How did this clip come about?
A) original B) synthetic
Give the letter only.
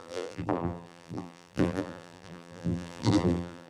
B